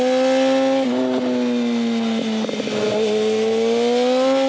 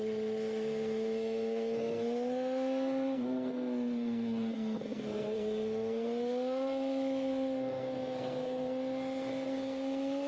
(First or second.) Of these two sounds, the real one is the first